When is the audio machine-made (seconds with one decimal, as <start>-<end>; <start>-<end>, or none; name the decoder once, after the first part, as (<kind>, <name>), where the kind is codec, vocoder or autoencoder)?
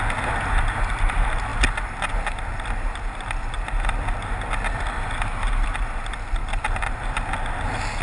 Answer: 6.4-7.3 (vocoder, BigVGAN v2)